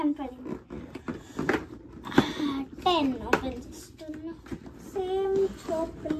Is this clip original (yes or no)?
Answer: yes